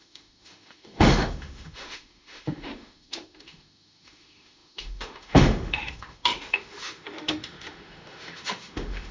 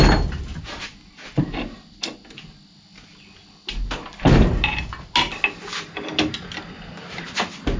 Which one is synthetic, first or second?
first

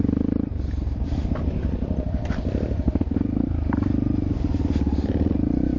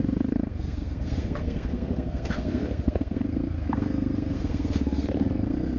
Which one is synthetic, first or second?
second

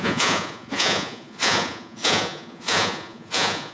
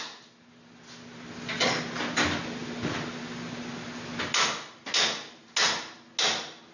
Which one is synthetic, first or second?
first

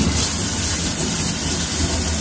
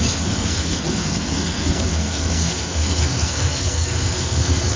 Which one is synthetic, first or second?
second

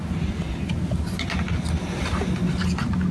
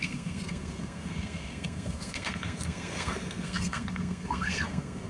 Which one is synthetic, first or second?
second